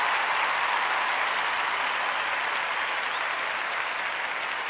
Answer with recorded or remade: recorded